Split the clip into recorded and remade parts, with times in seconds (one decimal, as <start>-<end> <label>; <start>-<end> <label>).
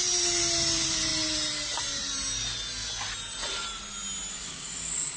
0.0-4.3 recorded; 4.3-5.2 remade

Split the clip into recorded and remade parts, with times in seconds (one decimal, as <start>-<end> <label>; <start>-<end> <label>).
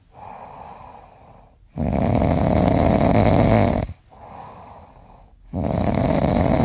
0.0-4.1 recorded; 4.1-6.0 remade; 6.0-6.6 recorded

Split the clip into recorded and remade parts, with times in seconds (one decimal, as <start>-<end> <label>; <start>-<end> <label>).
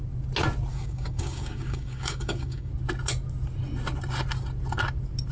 0.0-0.7 recorded; 0.7-2.7 remade; 2.7-5.3 recorded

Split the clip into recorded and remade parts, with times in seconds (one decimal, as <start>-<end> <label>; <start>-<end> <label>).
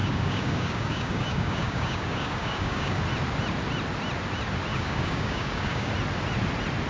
0.0-3.0 remade; 3.0-4.7 recorded; 4.7-5.9 remade; 5.9-6.9 recorded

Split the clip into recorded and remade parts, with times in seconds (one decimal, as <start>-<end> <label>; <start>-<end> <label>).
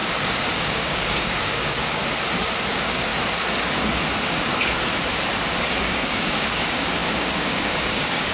0.0-2.0 remade; 2.0-2.7 recorded; 2.7-3.1 remade; 3.1-5.8 recorded; 5.8-8.3 remade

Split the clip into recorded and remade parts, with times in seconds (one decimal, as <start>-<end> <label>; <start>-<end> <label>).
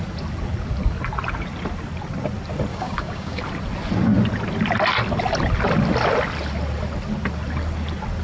0.0-2.7 recorded; 2.7-3.4 remade; 3.4-8.2 recorded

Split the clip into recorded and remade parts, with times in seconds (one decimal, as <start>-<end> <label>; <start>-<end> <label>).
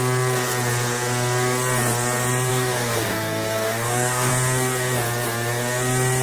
0.0-2.5 recorded; 2.5-4.3 remade; 4.3-6.2 recorded